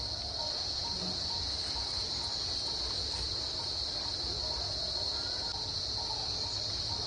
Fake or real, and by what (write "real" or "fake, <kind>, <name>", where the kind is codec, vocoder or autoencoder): real